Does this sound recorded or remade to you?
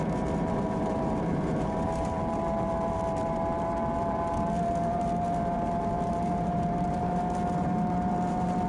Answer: remade